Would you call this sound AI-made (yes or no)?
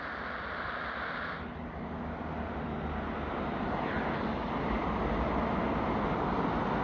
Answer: no